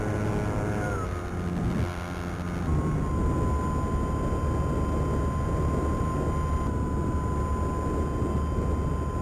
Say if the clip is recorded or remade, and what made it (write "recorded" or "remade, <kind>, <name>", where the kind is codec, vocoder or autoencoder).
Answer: recorded